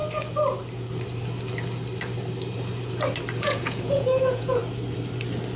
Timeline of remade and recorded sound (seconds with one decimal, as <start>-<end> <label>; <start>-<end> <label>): 0.0-3.4 recorded; 3.4-4.6 remade; 4.6-5.6 recorded